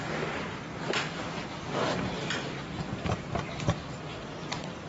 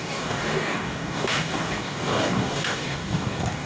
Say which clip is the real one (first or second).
first